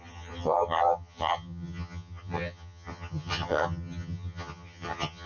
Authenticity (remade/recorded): remade